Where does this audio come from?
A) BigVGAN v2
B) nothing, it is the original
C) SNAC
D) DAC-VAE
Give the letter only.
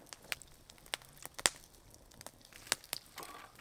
B